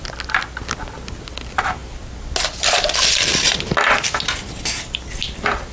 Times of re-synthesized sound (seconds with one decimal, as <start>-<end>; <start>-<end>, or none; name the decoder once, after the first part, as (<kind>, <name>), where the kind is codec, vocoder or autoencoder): none